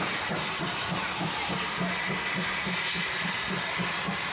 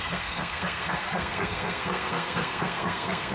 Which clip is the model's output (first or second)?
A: second